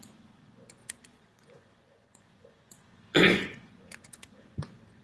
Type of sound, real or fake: fake